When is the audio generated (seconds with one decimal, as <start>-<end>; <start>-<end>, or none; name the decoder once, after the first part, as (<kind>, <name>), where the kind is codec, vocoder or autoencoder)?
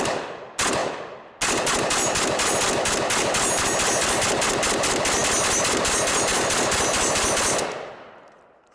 none